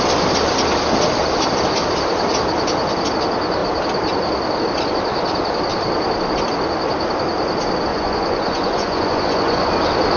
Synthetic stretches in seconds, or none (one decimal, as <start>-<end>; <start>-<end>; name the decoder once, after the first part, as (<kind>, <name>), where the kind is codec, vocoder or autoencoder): 7.9-9.7 (vocoder, Vocos)